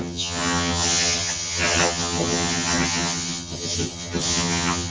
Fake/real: fake